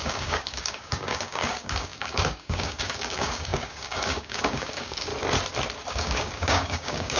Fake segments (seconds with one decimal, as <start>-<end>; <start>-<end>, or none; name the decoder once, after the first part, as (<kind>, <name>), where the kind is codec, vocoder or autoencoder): 0.0-5.1 (codec, DAC); 5.9-7.2